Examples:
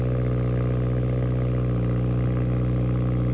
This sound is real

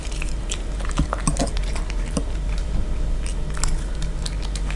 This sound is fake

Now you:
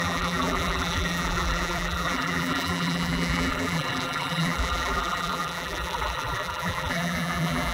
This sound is fake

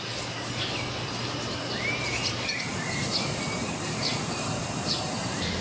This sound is fake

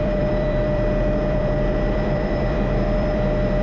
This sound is fake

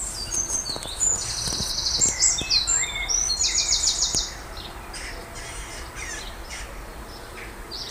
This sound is real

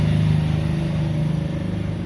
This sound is real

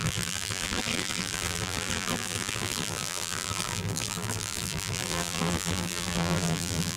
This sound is fake